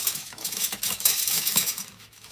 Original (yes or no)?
no